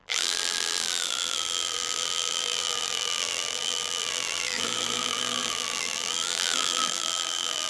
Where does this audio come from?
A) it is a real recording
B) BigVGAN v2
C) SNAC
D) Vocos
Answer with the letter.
B